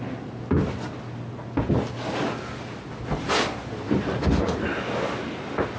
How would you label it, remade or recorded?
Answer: recorded